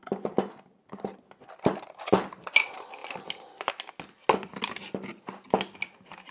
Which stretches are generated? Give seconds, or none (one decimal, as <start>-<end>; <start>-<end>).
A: none